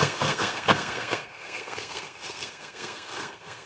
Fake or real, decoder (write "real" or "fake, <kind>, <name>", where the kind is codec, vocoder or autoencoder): fake, codec, SNAC